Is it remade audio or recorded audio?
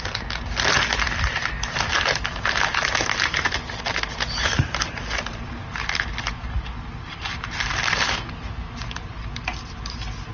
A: recorded